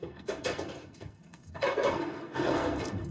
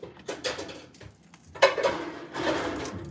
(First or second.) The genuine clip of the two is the second